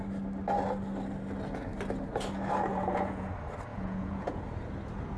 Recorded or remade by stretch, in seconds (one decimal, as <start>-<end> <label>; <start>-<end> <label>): 0.0-2.7 recorded; 2.7-3.3 remade; 3.3-3.7 recorded; 3.7-4.4 remade; 4.4-5.2 recorded